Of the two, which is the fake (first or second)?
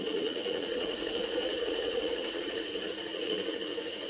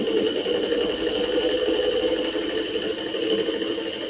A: first